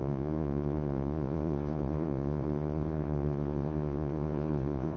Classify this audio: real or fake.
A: fake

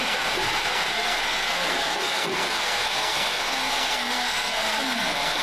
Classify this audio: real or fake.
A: fake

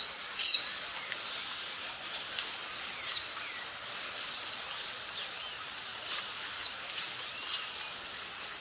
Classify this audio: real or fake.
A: real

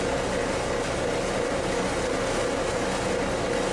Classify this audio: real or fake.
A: real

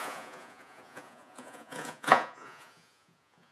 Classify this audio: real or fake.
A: fake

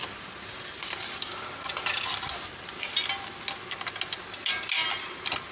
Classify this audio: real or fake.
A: real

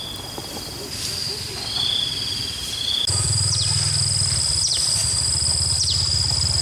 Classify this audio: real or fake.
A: real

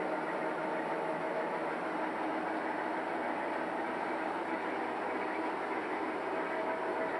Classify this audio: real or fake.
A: real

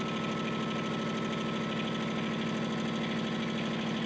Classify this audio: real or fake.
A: real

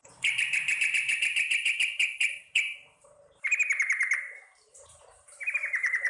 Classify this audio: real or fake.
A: fake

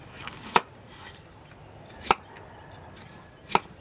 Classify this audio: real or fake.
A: real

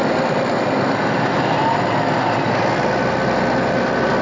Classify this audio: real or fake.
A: real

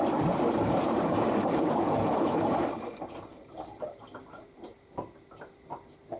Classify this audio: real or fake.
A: fake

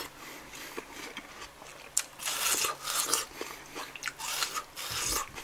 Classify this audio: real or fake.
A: real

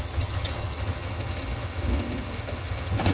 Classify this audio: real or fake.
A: fake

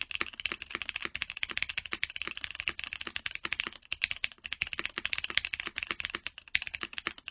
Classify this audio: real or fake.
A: real